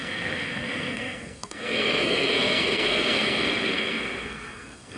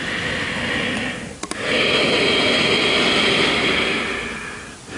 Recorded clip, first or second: second